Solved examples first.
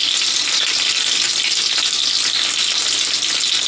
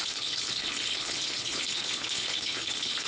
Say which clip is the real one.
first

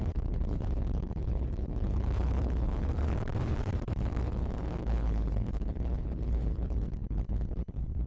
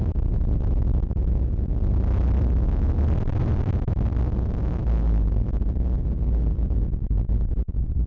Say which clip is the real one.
second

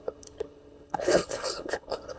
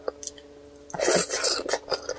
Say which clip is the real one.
second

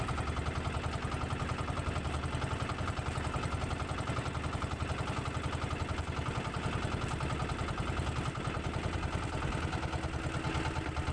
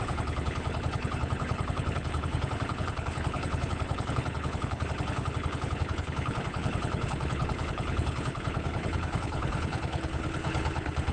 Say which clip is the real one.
first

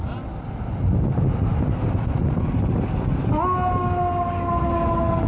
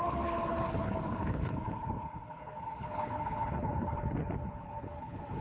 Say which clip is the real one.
first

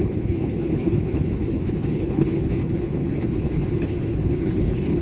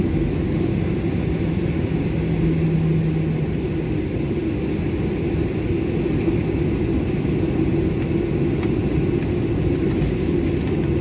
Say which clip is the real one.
second